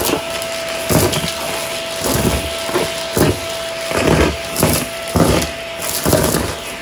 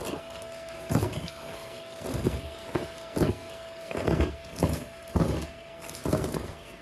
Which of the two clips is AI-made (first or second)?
second